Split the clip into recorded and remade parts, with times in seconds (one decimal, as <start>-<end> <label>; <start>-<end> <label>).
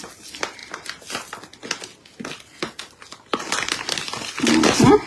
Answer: 0.0-5.1 recorded